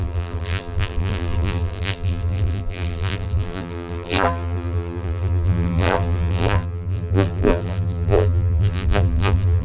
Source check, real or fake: fake